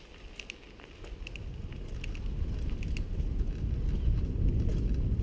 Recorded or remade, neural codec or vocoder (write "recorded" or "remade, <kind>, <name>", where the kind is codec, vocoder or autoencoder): recorded